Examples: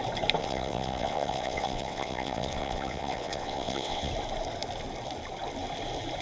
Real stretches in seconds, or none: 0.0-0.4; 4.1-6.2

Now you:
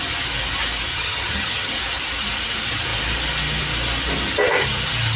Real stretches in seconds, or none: 0.0-0.9; 1.7-5.2

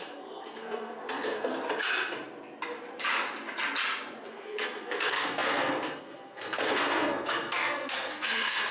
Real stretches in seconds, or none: 1.5-4.3

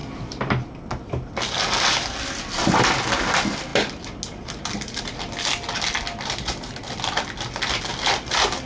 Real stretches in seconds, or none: 0.0-8.7